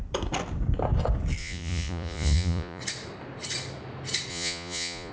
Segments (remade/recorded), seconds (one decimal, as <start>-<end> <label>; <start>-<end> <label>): 0.0-1.4 recorded; 1.4-2.8 remade; 2.8-4.3 recorded; 4.3-5.1 remade